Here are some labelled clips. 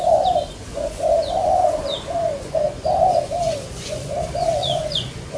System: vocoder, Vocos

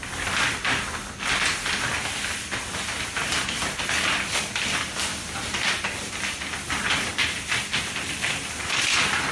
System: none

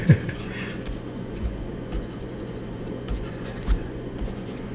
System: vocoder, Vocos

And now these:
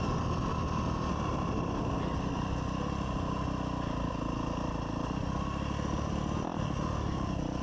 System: none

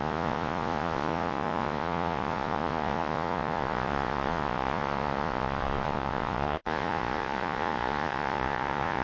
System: vocoder, Vocos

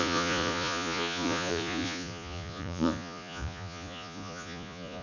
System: vocoder, Vocos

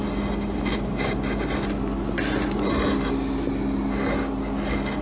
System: none